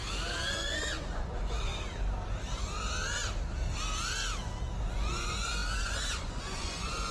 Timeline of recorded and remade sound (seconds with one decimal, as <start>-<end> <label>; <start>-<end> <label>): 0.0-0.5 recorded; 0.5-1.7 remade; 1.7-4.8 recorded; 4.8-7.1 remade

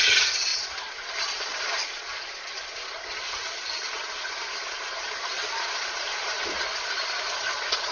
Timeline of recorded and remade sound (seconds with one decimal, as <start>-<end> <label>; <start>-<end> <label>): 0.0-7.9 remade

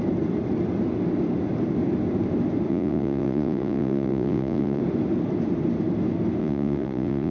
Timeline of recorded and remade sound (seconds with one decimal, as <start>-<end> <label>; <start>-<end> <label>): 0.0-2.7 recorded; 2.7-4.8 remade; 4.8-6.4 recorded; 6.4-7.3 remade

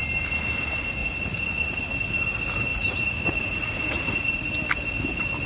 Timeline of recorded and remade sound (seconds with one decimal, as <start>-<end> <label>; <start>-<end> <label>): 0.0-1.0 recorded; 1.0-1.7 remade; 1.7-2.7 recorded; 2.7-4.4 remade; 4.4-5.5 recorded

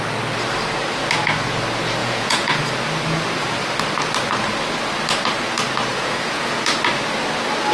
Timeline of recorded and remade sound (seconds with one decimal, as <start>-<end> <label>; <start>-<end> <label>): 0.0-2.0 recorded; 2.0-2.6 remade; 2.6-5.9 recorded; 5.9-6.6 remade; 6.6-7.7 recorded

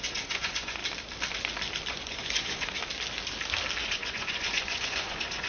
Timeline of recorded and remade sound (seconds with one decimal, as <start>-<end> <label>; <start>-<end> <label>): 0.0-0.8 remade; 0.8-1.9 recorded; 1.9-2.8 remade; 2.8-3.8 recorded; 3.8-5.5 remade